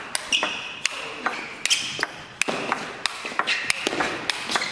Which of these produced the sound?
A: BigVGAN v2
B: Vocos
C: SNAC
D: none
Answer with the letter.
D